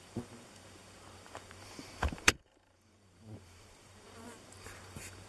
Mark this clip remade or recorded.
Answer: remade